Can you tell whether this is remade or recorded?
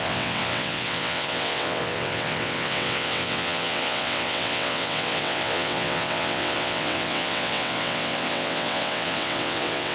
remade